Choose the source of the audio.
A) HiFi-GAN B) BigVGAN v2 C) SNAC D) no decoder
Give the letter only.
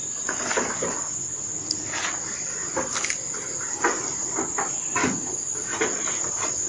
D